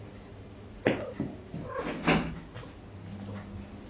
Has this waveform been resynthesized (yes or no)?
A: no